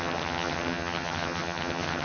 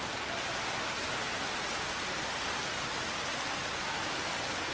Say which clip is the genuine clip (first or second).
second